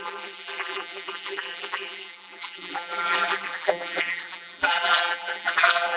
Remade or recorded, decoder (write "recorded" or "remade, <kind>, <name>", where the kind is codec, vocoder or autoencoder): remade, vocoder, BigVGAN v2